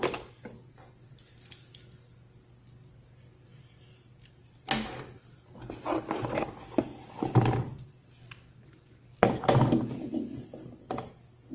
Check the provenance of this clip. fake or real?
real